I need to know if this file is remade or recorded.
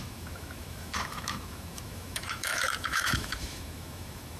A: remade